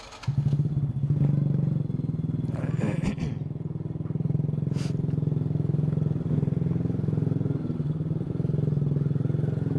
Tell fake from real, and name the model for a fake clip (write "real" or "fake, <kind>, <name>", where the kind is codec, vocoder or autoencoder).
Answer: real